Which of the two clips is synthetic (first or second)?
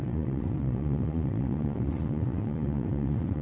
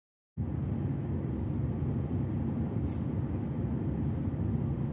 first